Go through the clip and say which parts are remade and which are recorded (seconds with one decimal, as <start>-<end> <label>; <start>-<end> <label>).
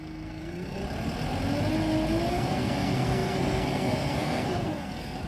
0.0-0.8 remade; 0.8-2.3 recorded; 2.3-5.3 remade